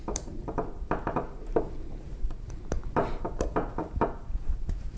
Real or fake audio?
fake